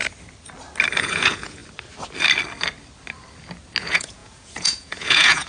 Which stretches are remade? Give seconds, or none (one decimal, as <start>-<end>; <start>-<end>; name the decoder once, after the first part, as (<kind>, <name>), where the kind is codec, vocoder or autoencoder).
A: 1.0-1.6 (vocoder, Vocos); 3.8-5.5